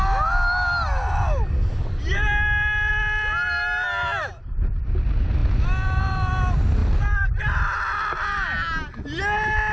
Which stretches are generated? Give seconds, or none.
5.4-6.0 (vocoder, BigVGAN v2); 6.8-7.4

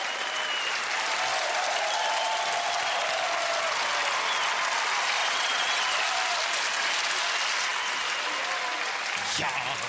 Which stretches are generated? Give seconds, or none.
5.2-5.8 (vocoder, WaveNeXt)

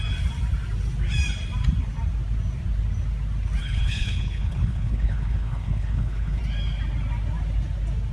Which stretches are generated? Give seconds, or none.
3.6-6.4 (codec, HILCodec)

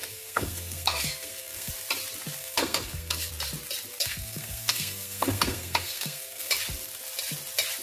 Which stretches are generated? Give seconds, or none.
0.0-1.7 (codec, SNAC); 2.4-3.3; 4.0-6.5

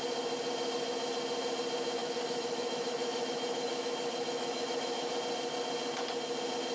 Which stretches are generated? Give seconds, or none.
2.0-5.1 (autoencoder, DAC-VAE)